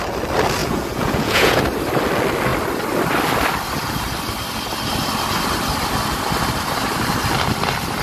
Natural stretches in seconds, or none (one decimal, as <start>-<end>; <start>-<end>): 0.0-0.6; 1.6-8.0